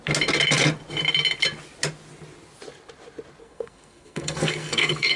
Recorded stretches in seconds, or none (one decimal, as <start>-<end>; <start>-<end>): 0.0-3.4